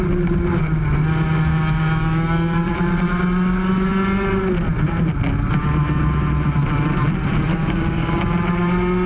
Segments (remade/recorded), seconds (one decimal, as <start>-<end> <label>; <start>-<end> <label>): 0.0-1.5 recorded; 1.5-2.7 remade; 2.7-7.5 recorded; 7.5-8.2 remade; 8.2-9.1 recorded